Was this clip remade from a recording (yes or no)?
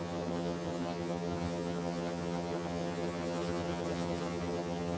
yes